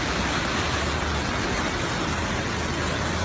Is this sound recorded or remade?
recorded